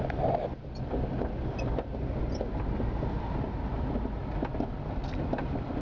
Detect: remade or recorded remade